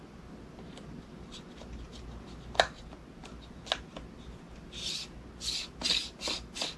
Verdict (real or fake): real